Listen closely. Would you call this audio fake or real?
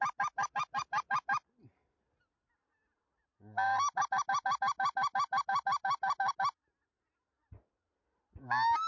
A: real